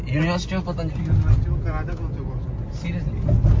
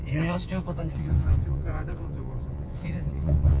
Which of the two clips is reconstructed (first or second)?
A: second